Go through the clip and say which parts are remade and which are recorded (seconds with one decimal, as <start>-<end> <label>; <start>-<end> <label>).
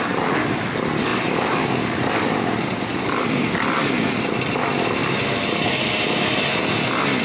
0.0-7.2 recorded